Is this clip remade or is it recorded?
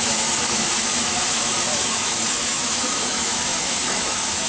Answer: remade